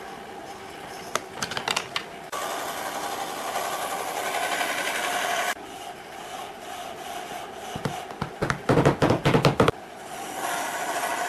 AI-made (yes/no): no